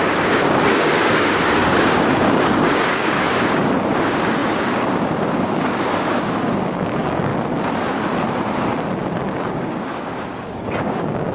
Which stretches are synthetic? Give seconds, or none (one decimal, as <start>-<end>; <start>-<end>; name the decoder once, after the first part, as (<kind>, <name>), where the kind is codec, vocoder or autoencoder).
0.0-7.3 (codec, DAC); 9.5-11.3